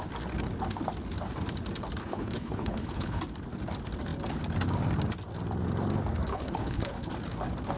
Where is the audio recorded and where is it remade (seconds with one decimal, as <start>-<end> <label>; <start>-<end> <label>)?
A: 0.0-2.0 recorded; 2.0-3.2 remade; 3.2-6.3 recorded; 6.3-7.1 remade; 7.1-7.8 recorded